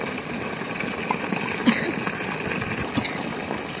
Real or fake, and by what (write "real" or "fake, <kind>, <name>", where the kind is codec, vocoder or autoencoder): real